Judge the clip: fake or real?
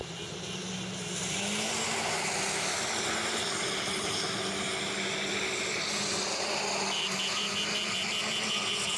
real